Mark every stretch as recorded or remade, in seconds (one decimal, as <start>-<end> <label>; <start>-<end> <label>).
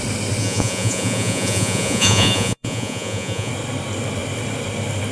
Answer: 0.0-0.4 recorded; 0.4-3.5 remade; 3.5-5.1 recorded